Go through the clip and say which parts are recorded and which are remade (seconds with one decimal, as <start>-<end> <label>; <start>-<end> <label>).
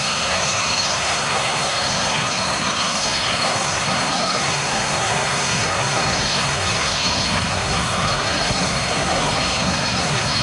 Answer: 0.0-10.4 remade